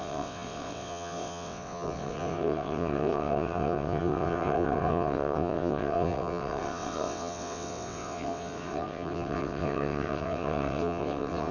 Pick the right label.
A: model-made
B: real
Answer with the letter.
A